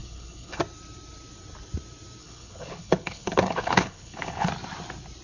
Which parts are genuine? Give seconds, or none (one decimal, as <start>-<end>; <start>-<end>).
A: 0.6-2.2; 4.5-5.2

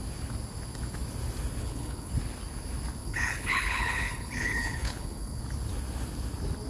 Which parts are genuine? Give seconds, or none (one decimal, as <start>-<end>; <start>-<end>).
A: 0.0-1.6; 2.1-3.0; 5.4-6.7